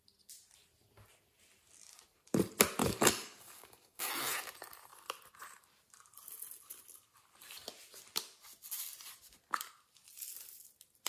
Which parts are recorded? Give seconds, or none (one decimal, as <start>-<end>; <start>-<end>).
0.0-2.8; 4.1-11.1